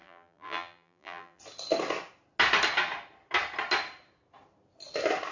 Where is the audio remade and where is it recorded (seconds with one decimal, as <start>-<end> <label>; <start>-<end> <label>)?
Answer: 0.0-1.4 remade; 1.4-5.3 recorded